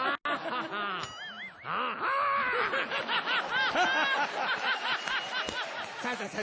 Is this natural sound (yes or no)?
yes